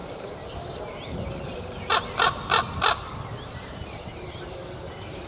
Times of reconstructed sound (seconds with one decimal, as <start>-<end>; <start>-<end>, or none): 0.0-1.9; 3.3-4.6